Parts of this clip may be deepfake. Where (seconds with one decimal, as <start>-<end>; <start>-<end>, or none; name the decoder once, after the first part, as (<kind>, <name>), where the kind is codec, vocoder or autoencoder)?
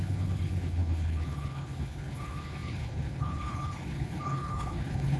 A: 0.0-5.2 (codec, HILCodec)